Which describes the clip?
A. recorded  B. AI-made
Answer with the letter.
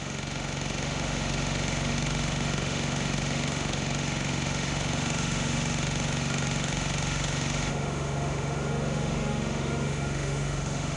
B